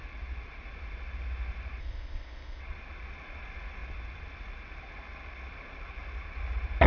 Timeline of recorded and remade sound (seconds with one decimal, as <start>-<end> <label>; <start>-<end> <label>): 0.0-1.8 recorded; 1.8-2.6 remade; 2.6-6.9 recorded